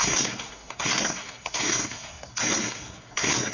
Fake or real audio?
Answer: fake